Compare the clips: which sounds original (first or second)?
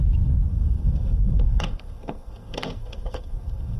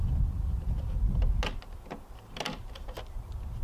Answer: second